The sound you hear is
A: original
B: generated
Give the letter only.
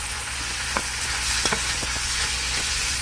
B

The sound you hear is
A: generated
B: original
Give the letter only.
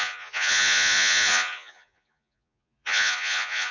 A